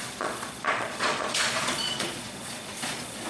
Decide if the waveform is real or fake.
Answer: fake